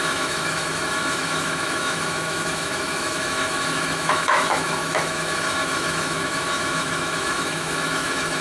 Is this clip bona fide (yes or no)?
no